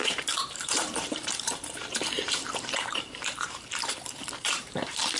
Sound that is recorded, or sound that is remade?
remade